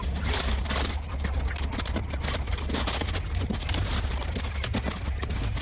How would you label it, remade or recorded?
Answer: recorded